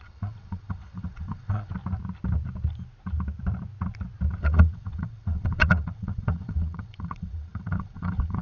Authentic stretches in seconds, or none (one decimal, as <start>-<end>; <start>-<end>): 1.7-4.4